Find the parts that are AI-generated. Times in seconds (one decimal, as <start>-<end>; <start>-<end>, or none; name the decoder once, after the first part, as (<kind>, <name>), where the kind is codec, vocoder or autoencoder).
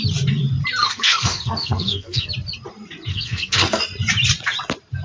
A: 0.8-2.3 (codec, SNAC); 3.1-3.8